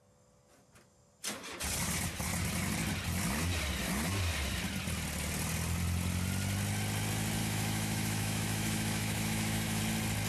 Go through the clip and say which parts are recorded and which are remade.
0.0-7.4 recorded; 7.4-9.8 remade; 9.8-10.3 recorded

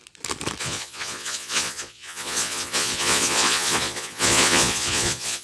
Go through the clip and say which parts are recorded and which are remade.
0.0-0.6 recorded; 0.6-5.4 remade

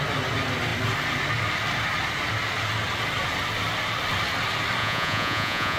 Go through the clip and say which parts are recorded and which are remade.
0.0-4.8 recorded; 4.8-5.8 remade

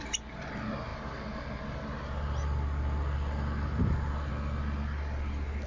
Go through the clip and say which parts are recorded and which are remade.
0.0-5.7 recorded